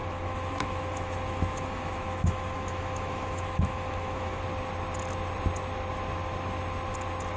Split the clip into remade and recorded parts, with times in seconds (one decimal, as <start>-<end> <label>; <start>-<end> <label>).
0.0-4.4 remade; 4.4-7.4 recorded